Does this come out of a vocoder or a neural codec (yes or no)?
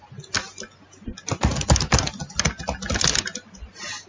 no